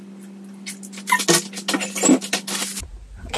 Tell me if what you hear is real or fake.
real